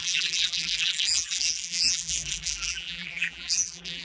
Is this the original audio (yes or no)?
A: no